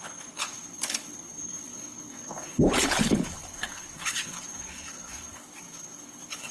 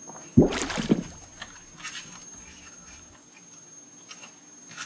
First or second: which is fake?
first